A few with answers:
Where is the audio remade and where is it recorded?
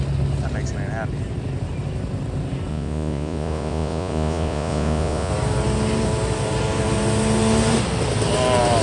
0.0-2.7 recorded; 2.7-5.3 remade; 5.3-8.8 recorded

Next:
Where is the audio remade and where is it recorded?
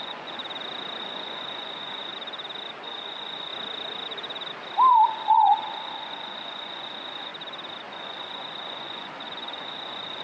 0.0-0.4 remade; 0.4-1.0 recorded; 1.0-2.1 remade; 2.1-2.8 recorded; 2.8-3.5 remade; 3.5-4.9 recorded; 4.9-7.3 remade; 7.3-7.9 recorded; 7.9-10.2 remade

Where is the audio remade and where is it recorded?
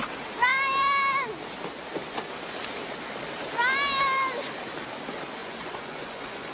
0.0-5.4 recorded; 5.4-6.5 remade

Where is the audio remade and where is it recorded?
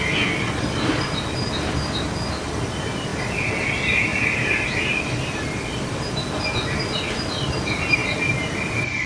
0.0-9.1 recorded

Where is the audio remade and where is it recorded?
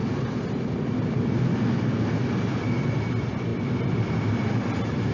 0.0-5.1 recorded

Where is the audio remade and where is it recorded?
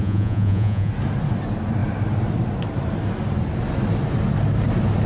0.0-0.9 remade; 0.9-5.1 recorded